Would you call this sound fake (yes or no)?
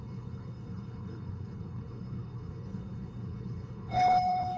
yes